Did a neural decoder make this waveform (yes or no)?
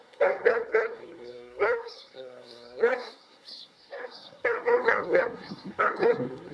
yes